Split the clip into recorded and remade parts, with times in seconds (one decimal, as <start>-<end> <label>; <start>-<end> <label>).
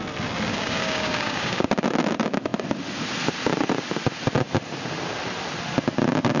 0.0-0.5 recorded; 0.5-1.7 remade; 1.7-6.4 recorded